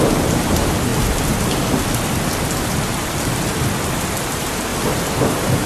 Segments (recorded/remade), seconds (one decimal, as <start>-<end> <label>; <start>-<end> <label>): 0.0-0.9 remade; 0.9-4.3 recorded; 4.3-4.7 remade; 4.7-5.2 recorded; 5.2-5.7 remade